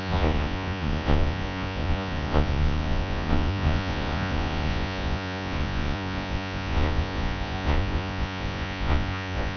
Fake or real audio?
fake